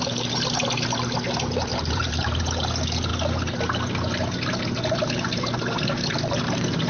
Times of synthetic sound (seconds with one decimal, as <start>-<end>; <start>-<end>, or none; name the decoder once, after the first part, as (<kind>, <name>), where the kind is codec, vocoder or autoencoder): 1.7-2.4 (vocoder, BigVGAN v2)